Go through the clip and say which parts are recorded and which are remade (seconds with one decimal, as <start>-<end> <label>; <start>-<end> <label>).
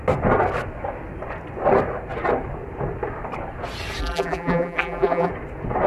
0.0-4.0 recorded; 4.0-5.3 remade; 5.3-5.9 recorded